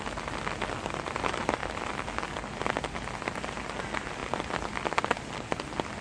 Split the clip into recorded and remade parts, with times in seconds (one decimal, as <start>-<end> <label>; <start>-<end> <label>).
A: 0.0-6.0 recorded